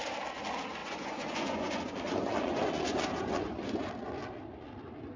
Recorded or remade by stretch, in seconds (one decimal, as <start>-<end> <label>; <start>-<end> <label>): 0.0-0.8 recorded; 0.8-3.9 remade; 3.9-5.2 recorded